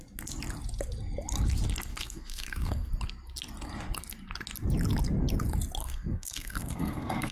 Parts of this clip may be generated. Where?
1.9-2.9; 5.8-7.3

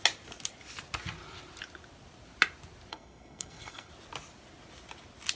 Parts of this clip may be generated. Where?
2.9-3.9

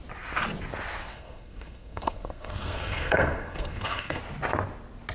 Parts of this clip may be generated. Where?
1.1-4.2

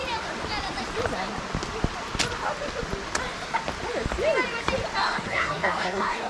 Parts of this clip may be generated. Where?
5.0-6.3

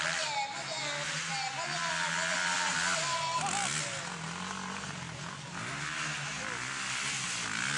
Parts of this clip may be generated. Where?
none

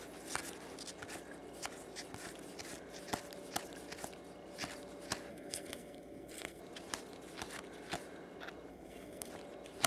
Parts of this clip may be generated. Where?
5.3-6.6; 8.7-9.3